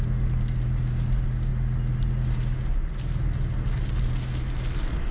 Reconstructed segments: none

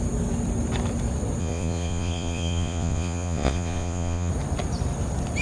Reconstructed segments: 1.4-4.3 (vocoder, Vocos)